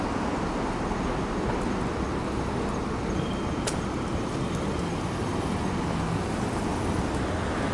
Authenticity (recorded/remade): recorded